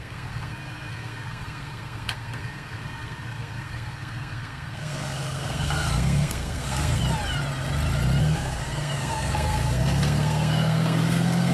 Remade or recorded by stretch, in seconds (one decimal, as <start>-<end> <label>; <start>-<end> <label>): 0.0-7.0 remade; 7.0-8.2 recorded; 8.2-11.5 remade